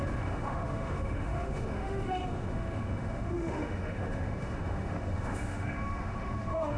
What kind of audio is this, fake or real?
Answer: fake